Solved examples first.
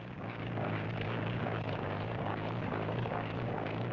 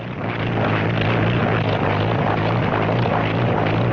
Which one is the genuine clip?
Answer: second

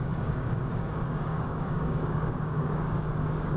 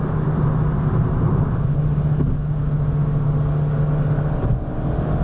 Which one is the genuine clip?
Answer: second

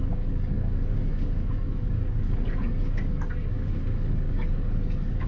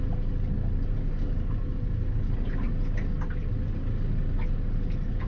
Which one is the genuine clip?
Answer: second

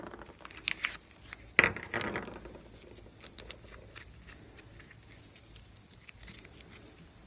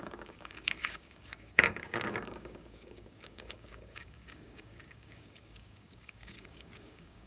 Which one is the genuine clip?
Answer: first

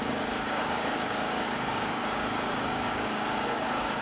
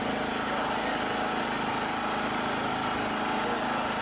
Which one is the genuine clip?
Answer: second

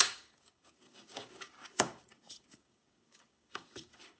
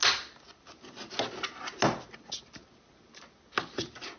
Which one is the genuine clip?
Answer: second